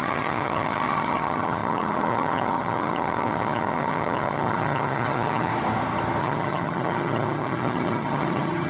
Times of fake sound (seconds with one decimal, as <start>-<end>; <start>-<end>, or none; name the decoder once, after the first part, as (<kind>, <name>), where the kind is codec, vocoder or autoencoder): 0.0-5.5 (vocoder, HiFi-GAN); 6.2-8.7